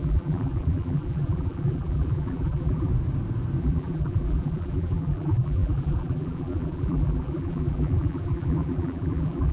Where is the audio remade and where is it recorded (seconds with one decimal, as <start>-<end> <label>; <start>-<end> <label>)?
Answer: 0.0-2.9 remade; 2.9-3.6 recorded; 3.6-9.5 remade